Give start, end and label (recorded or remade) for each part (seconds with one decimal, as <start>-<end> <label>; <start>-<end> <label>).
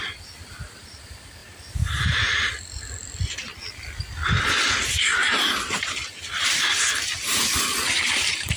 0.0-5.2 recorded; 5.2-6.1 remade; 6.1-8.6 recorded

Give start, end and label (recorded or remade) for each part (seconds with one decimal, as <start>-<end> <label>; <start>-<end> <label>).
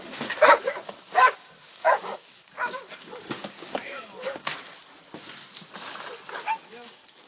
0.0-4.5 remade; 4.5-6.7 recorded; 6.7-7.3 remade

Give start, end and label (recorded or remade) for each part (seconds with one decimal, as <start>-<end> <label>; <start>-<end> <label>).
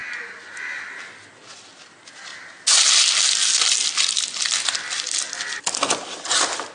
0.0-6.7 recorded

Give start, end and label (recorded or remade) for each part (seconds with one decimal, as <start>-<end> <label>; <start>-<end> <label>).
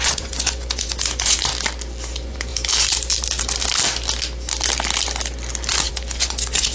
0.0-1.5 remade; 1.5-2.1 recorded; 2.1-2.5 remade; 2.5-5.9 recorded; 5.9-6.7 remade